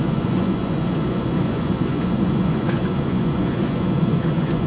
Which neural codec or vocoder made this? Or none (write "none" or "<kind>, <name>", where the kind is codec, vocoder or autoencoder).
vocoder, Vocos